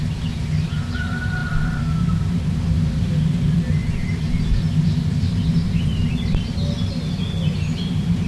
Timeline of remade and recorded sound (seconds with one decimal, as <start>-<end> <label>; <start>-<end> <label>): 0.0-3.8 recorded; 3.8-4.4 remade; 4.4-5.9 recorded; 5.9-7.2 remade; 7.2-8.3 recorded